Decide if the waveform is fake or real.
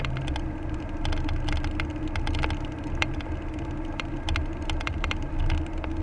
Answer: real